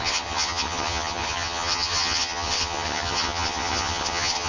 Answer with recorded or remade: remade